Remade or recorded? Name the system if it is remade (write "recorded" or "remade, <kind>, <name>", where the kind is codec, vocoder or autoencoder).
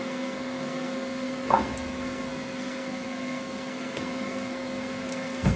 remade, codec, SNAC